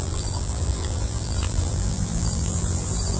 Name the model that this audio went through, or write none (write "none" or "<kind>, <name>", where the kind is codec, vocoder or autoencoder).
vocoder, BigVGAN v2